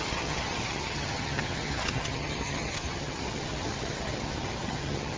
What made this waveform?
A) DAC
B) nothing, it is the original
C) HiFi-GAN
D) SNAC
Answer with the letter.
C